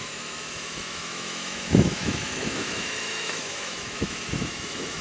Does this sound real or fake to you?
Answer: fake